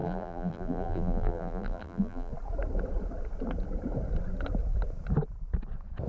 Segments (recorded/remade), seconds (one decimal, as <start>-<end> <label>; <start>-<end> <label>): 0.0-2.3 remade; 2.3-6.1 recorded